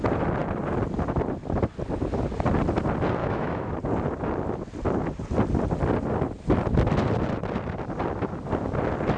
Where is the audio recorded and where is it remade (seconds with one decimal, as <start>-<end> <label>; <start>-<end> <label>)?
0.0-3.2 recorded; 3.2-3.7 remade; 3.7-9.2 recorded